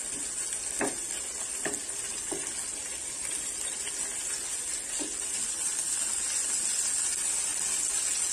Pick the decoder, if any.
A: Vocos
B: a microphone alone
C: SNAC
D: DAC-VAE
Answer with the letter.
B